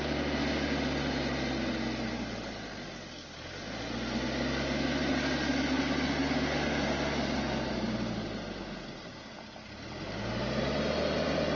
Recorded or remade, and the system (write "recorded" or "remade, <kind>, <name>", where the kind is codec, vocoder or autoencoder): recorded